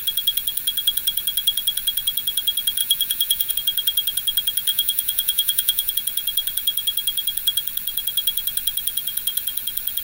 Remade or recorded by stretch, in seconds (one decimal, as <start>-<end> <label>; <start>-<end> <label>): 0.0-2.8 recorded; 2.8-3.5 remade; 3.5-4.7 recorded; 4.7-5.9 remade; 5.9-10.0 recorded